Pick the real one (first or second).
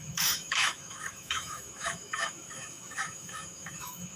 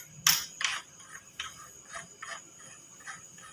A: second